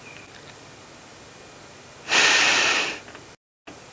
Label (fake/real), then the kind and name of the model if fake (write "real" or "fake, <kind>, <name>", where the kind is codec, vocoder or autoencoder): real